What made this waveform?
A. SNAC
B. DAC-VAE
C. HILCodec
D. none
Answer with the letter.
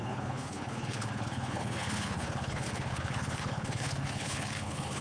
C